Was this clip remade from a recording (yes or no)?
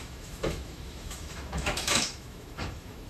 yes